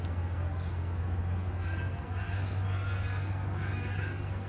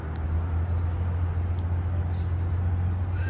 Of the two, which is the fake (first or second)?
first